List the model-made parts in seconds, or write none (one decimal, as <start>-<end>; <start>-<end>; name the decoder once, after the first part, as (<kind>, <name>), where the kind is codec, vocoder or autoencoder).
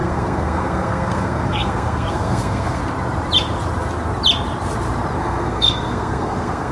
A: 0.0-2.8 (codec, SNAC); 5.2-6.7